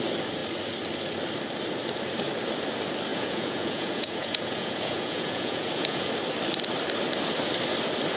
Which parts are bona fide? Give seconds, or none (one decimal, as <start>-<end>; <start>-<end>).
0.0-3.1; 6.1-8.2